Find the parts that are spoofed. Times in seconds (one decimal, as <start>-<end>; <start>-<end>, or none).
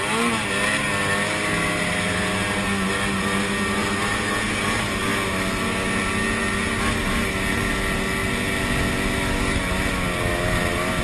none